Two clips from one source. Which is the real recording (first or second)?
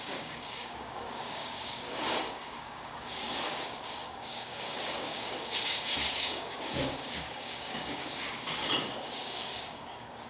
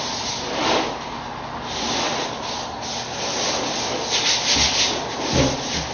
second